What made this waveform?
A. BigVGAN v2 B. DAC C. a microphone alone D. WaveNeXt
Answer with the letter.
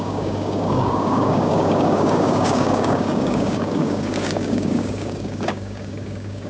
B